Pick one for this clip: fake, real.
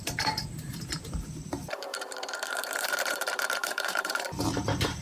fake